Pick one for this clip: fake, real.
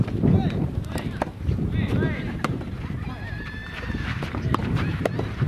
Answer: fake